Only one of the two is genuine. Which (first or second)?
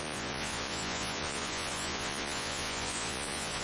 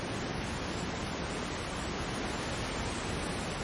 second